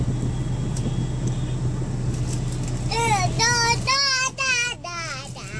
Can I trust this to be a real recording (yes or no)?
yes